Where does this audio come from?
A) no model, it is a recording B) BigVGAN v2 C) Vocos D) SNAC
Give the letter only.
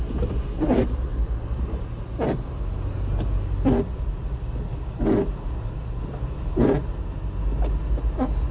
A